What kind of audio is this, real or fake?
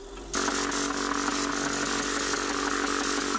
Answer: real